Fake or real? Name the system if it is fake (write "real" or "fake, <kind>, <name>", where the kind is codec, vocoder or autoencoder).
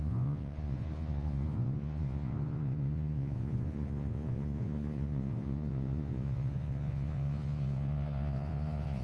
fake, vocoder, Vocos